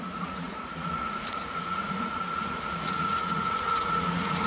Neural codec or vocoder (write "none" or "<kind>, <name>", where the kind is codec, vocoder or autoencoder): vocoder, Vocos